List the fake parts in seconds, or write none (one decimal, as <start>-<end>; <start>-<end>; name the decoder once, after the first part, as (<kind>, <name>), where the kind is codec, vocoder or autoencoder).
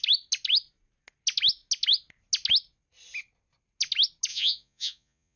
4.3-5.4 (vocoder, Vocos)